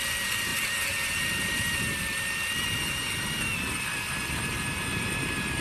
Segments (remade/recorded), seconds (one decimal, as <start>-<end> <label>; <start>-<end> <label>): 0.0-5.6 recorded

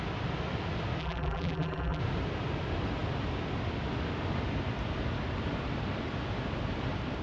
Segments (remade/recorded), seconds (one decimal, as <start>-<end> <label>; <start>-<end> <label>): 0.0-1.0 recorded; 1.0-2.0 remade; 2.0-7.2 recorded

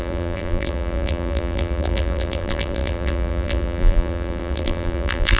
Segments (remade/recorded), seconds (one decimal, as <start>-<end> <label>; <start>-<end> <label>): 0.0-5.4 remade

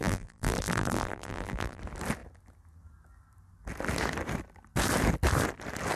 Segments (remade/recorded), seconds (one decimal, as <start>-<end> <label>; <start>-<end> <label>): 0.0-1.8 remade; 1.8-6.0 recorded

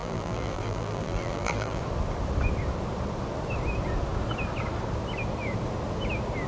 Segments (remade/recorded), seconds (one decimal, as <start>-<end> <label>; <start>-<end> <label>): 0.0-1.8 remade; 1.8-6.5 recorded